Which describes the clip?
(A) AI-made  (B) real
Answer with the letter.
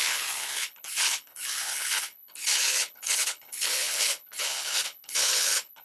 A